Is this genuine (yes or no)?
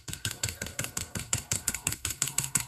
no